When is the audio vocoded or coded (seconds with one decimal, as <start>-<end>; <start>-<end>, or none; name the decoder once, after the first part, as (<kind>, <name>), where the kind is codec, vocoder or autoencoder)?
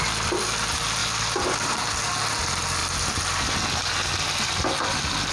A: 1.0-1.8 (vocoder, BigVGAN v2)